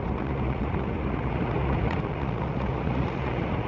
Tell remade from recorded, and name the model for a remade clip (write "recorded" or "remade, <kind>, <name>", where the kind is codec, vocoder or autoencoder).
remade, vocoder, Vocos